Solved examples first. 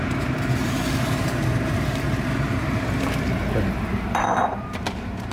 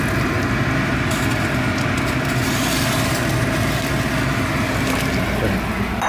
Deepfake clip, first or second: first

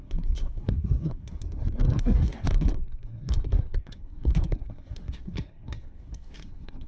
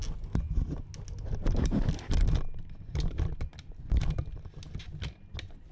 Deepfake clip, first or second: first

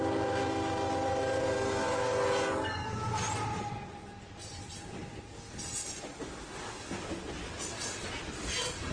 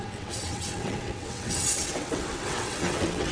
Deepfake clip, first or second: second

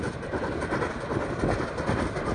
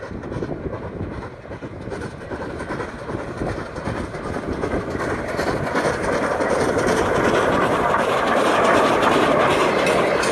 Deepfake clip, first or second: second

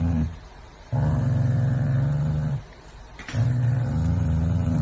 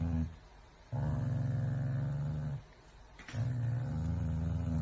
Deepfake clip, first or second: first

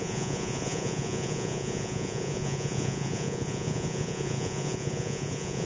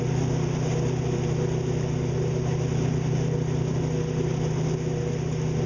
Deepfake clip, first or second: first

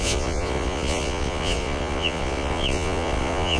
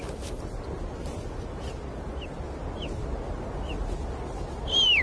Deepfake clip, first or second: first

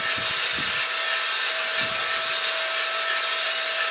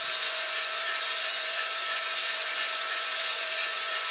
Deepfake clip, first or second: second